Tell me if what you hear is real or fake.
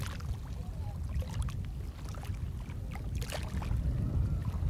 real